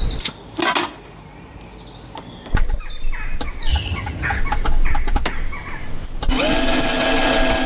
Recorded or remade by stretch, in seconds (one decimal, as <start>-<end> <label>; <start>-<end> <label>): 0.0-3.7 recorded; 3.7-4.4 remade; 4.4-7.7 recorded